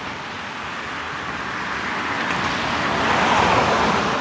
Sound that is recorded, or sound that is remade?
recorded